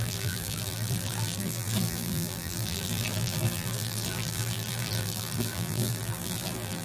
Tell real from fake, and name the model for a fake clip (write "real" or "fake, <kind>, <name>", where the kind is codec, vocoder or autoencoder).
fake, vocoder, BigVGAN v2